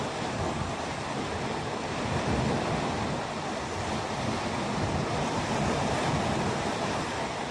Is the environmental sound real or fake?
real